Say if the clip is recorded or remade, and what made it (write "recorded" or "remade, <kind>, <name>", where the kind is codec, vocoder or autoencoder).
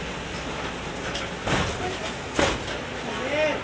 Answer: recorded